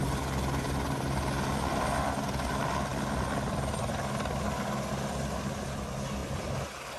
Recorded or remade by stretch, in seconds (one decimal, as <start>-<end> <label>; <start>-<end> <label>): 0.0-7.0 recorded